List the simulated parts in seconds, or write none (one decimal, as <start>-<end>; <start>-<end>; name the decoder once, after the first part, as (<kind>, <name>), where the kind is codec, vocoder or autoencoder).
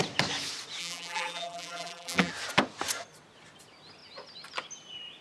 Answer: 0.8-2.3 (vocoder, BigVGAN v2)